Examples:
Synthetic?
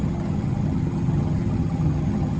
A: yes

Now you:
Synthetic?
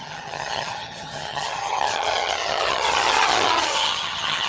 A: yes